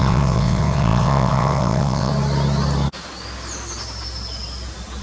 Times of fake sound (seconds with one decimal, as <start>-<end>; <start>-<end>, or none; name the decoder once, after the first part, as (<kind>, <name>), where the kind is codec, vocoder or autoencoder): 0.0-2.1 (vocoder, WaveNeXt)